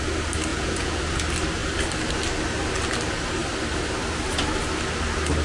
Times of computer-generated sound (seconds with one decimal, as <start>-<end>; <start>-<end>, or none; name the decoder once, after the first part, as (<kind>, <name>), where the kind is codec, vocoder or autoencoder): 0.5-1.0 (vocoder, Vocos)